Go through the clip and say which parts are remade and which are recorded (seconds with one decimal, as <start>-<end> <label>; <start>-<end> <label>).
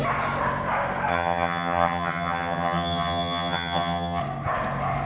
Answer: 0.0-1.1 recorded; 1.1-4.2 remade; 4.2-5.1 recorded